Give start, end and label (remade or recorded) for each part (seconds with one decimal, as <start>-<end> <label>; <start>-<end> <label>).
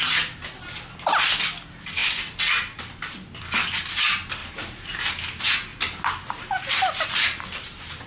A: 0.0-4.4 recorded; 4.4-5.1 remade; 5.1-8.1 recorded